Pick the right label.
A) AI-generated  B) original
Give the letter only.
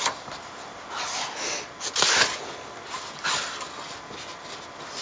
B